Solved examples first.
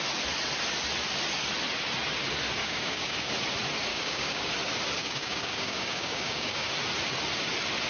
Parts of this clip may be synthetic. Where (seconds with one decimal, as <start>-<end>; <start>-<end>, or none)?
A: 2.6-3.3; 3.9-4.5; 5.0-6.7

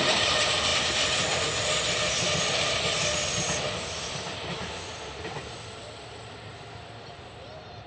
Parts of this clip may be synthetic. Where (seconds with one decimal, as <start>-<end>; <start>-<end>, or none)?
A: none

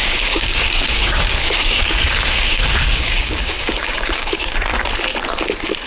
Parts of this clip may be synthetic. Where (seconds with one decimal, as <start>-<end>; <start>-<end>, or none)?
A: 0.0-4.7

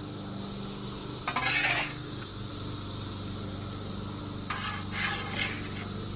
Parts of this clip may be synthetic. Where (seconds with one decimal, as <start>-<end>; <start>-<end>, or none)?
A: 1.9-2.5

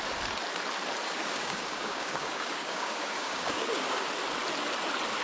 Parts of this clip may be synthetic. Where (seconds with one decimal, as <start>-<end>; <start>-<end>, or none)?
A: 1.0-4.1

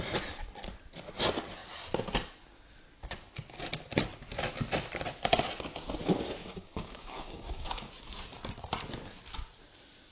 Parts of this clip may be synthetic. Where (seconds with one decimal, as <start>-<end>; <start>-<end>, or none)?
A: 6.4-7.9

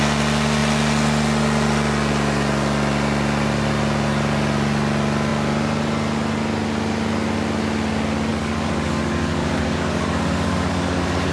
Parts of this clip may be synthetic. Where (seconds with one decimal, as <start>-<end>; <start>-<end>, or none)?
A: 8.3-11.3